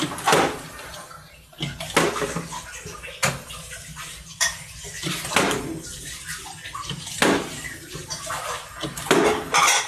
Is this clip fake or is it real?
real